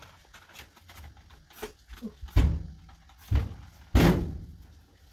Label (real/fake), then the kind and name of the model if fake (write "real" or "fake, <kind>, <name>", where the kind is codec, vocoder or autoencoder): real